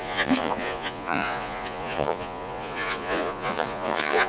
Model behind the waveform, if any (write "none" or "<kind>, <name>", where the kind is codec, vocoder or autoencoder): vocoder, Vocos